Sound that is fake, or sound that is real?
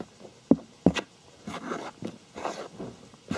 real